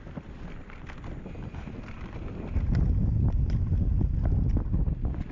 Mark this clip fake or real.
real